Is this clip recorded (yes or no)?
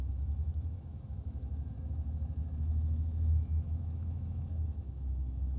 no